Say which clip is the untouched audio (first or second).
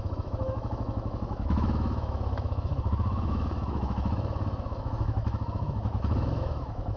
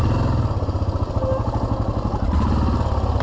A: second